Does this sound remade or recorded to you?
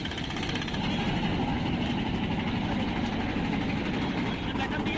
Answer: recorded